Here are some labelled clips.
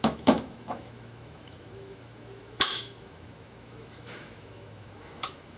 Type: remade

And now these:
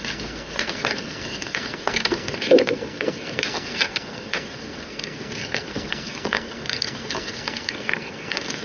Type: remade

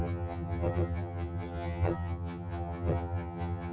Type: remade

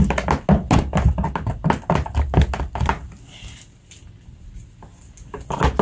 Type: recorded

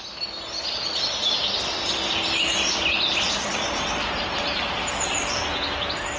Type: recorded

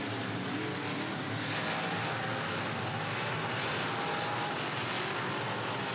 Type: recorded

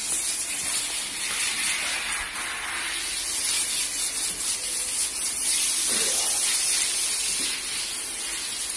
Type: recorded